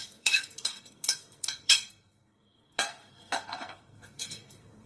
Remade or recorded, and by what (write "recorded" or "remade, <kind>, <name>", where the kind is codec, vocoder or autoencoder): remade, codec, SNAC